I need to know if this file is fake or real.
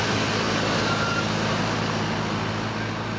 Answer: real